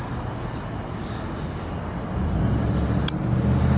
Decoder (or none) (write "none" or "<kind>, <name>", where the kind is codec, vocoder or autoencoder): none